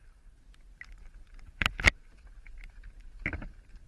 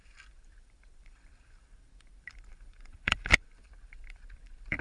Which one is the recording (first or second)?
first